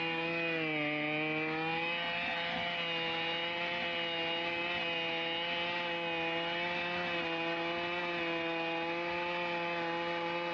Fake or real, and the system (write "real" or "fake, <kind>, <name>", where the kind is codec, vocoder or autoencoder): real